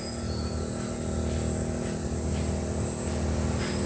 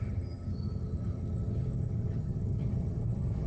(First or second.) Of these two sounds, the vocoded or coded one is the second